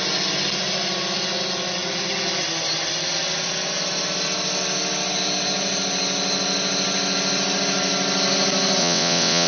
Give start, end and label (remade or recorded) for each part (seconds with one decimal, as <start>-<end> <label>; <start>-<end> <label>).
0.0-8.8 recorded; 8.8-9.5 remade